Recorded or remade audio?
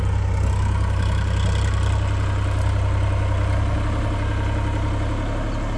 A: recorded